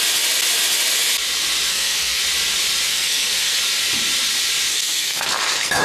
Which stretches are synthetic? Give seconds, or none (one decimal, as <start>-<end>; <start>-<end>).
1.7-2.2; 2.9-3.6; 4.7-5.8